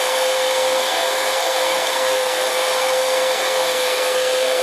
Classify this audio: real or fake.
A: fake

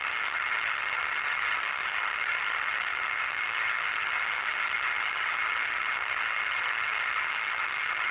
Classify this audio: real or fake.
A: fake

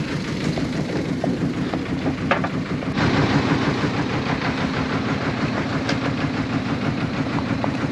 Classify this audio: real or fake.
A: fake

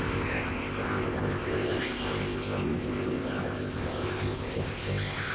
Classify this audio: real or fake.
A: fake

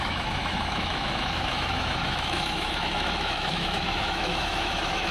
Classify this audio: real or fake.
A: fake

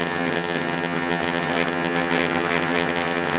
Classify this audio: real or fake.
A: fake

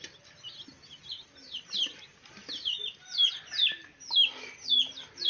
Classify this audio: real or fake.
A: real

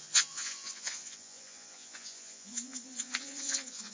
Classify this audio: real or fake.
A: fake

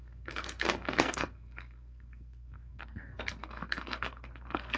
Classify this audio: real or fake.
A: fake